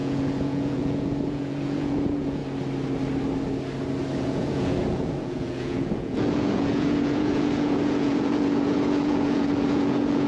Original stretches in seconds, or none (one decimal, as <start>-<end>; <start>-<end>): 2.4-4.2